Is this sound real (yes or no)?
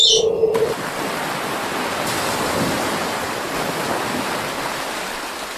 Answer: yes